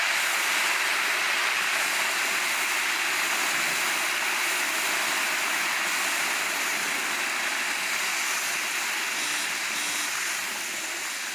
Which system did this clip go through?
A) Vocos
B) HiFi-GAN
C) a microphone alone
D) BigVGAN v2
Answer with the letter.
C